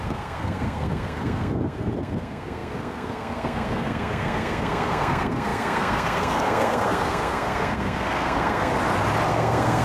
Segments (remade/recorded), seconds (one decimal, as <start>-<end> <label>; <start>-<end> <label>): 0.0-8.7 remade; 8.7-9.3 recorded; 9.3-9.8 remade